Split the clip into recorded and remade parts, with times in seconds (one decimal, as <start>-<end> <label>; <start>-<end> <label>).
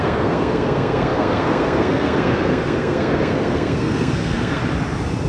0.0-4.6 remade; 4.6-5.3 recorded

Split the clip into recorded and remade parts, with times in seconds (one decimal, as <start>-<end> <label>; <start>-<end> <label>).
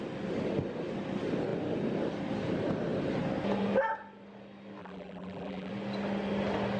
0.0-4.8 recorded; 4.8-5.7 remade; 5.7-6.8 recorded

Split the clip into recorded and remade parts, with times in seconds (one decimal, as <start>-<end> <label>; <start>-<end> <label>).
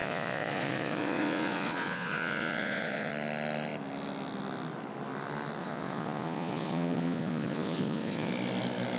0.0-3.1 remade; 3.1-5.6 recorded; 5.6-8.3 remade; 8.3-9.0 recorded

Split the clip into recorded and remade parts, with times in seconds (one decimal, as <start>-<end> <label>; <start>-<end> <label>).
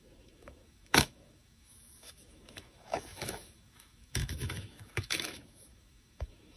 0.0-6.6 remade